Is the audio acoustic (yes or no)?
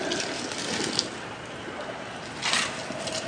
yes